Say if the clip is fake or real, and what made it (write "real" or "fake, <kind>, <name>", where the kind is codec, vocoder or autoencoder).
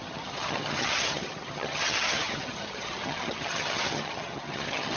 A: fake, vocoder, HiFi-GAN